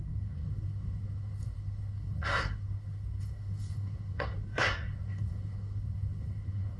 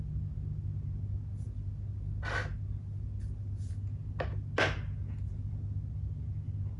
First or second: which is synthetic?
first